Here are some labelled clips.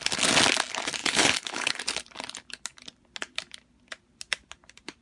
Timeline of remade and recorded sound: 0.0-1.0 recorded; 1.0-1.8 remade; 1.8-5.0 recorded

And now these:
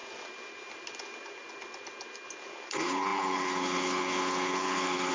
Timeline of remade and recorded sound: 0.0-2.7 recorded; 2.7-5.1 remade

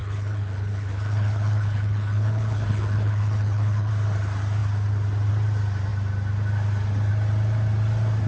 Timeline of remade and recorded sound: 0.0-3.9 remade; 3.9-8.3 recorded

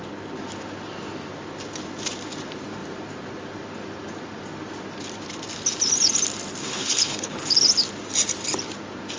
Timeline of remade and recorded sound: 0.0-6.6 recorded; 6.6-7.5 remade; 7.5-9.2 recorded

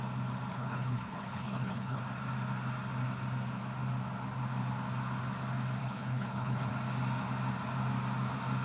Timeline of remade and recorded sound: 0.0-0.5 recorded; 0.5-2.0 remade; 2.0-5.8 recorded; 5.8-6.7 remade; 6.7-8.6 recorded

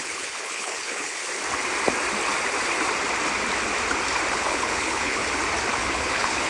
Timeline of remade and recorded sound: 0.0-1.2 remade; 1.2-4.3 recorded; 4.3-5.2 remade; 5.2-5.7 recorded; 5.7-6.5 remade

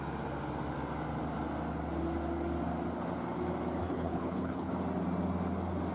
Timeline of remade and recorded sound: 0.0-3.8 recorded; 3.8-4.7 remade; 4.7-5.9 recorded